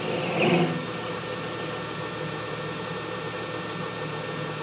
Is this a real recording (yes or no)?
yes